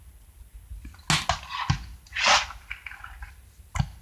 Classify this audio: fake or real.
real